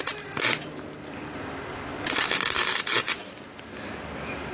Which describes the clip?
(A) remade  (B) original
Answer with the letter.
B